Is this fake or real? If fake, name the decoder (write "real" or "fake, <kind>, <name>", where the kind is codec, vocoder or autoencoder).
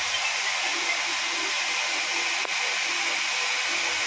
real